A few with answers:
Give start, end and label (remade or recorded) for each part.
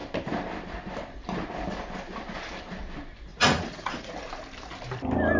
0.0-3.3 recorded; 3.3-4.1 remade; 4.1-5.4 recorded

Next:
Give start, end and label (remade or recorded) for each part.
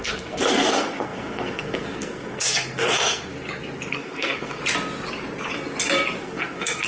0.0-3.3 remade; 3.3-3.9 recorded; 3.9-4.6 remade; 4.6-6.2 recorded; 6.2-6.9 remade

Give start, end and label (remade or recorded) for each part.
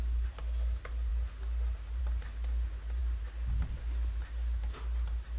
0.0-5.4 recorded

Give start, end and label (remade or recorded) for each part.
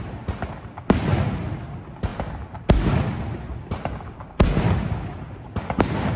0.0-6.2 recorded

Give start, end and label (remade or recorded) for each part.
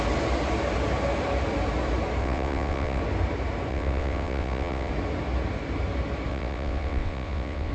0.0-2.2 recorded; 2.2-3.0 remade; 3.0-3.7 recorded; 3.7-4.9 remade; 4.9-6.3 recorded; 6.3-7.7 remade